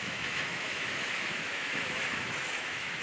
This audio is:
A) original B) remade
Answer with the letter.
B